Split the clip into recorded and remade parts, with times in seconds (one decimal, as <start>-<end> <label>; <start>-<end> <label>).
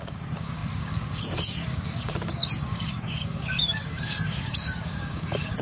0.0-5.6 remade